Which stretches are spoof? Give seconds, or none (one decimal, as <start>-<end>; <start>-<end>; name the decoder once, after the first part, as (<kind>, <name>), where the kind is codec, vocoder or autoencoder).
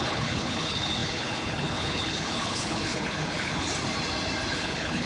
0.0-3.7 (codec, HILCodec); 4.5-5.1